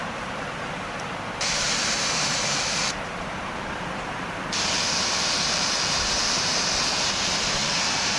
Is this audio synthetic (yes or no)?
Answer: yes